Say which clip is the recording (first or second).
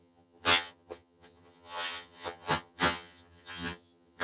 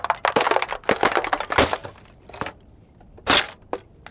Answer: second